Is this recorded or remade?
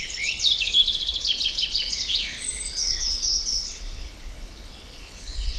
remade